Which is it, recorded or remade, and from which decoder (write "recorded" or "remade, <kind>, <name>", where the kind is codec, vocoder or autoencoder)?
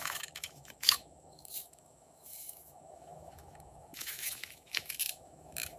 remade, autoencoder, DAC-VAE